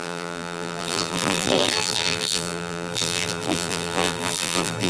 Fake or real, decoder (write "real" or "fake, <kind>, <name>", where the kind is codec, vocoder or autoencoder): fake, vocoder, BigVGAN v2